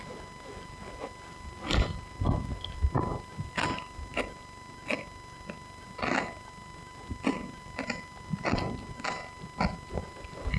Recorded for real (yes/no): yes